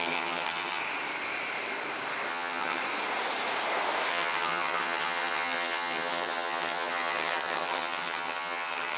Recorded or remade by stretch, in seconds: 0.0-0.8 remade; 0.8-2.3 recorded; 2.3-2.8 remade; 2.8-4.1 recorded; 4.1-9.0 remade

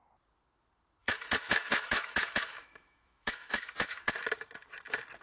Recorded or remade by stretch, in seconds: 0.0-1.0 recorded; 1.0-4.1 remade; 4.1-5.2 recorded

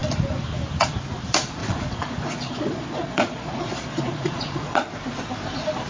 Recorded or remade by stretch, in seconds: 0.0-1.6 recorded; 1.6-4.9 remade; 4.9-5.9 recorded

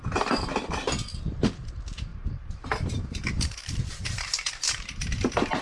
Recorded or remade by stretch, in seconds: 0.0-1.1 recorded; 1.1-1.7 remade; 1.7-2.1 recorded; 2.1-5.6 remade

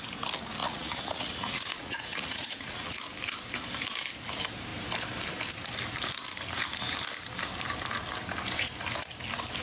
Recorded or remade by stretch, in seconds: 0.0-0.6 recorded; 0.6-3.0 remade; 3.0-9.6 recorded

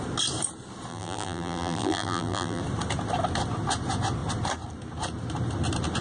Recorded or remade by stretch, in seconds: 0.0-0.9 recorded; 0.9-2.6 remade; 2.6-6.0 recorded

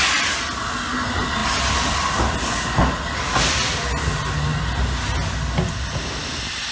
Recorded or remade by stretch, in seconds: 0.0-6.7 recorded